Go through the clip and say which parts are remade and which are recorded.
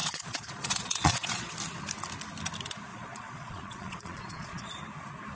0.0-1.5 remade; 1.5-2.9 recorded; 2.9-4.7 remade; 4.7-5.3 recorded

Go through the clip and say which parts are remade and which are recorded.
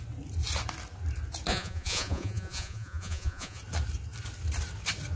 0.0-1.5 recorded; 1.5-3.6 remade; 3.6-5.2 recorded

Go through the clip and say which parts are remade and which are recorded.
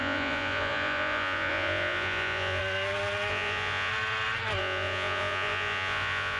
0.0-2.6 remade; 2.6-3.3 recorded; 3.3-3.9 remade; 3.9-4.6 recorded; 4.6-6.4 remade